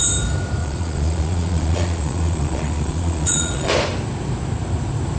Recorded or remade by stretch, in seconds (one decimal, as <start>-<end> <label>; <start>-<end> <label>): 0.0-0.6 recorded; 0.6-3.7 remade; 3.7-5.2 recorded